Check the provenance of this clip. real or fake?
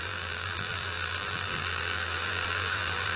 fake